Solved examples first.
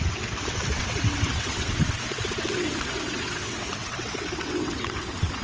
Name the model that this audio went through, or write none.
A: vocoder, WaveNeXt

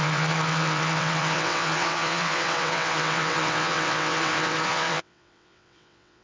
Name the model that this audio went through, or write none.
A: vocoder, WaveNeXt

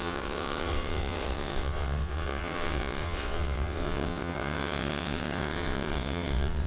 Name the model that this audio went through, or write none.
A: vocoder, WaveNeXt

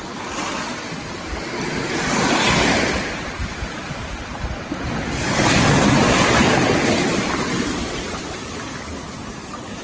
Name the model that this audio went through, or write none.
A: none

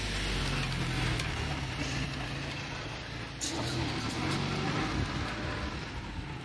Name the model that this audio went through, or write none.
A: none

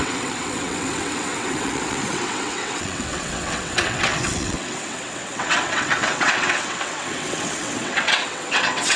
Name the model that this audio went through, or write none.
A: vocoder, WaveNeXt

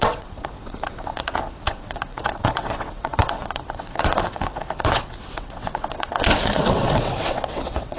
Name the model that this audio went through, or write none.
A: vocoder, WaveNeXt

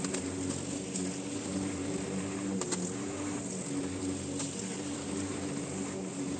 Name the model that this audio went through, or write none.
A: none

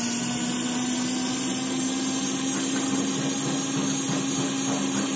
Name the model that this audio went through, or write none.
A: none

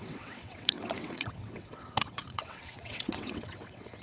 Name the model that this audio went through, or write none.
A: vocoder, WaveNeXt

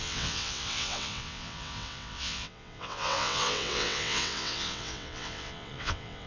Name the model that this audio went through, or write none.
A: vocoder, WaveNeXt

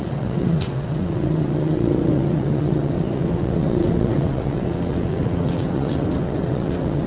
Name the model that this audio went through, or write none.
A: vocoder, WaveNeXt